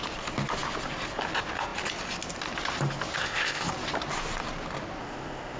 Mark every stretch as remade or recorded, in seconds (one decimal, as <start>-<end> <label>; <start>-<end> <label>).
0.0-3.2 recorded; 3.2-3.7 remade; 3.7-5.0 recorded; 5.0-5.6 remade